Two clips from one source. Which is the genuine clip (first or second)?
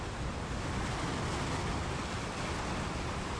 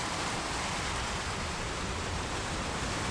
first